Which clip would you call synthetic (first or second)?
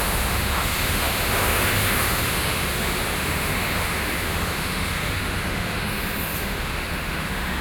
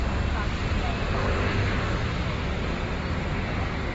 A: first